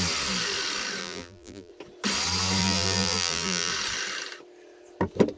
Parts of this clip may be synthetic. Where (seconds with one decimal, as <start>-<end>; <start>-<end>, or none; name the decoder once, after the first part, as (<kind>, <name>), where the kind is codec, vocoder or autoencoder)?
1.0-1.7 (vocoder, BigVGAN v2); 2.6-3.7